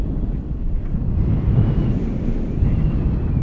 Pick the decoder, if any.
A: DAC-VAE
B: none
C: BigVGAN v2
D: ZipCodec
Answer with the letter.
B